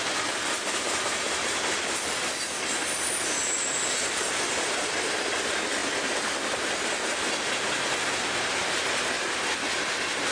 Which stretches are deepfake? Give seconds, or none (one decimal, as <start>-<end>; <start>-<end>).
none